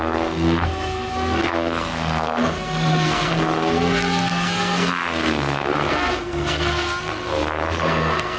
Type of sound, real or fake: fake